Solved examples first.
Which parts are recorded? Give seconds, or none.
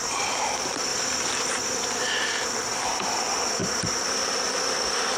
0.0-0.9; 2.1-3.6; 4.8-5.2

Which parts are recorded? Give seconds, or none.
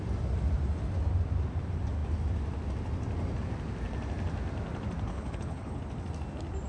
0.0-5.1; 5.8-6.7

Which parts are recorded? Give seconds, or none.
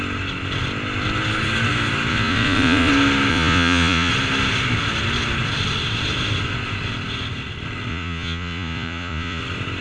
0.0-2.1; 2.9-3.3; 4.1-7.9; 9.4-9.8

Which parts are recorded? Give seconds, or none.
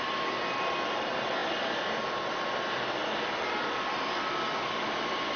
0.0-5.4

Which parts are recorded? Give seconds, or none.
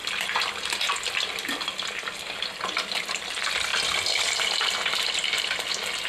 0.0-6.1